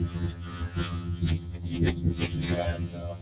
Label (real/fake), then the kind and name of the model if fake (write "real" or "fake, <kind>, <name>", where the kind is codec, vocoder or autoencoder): fake, vocoder, HiFi-GAN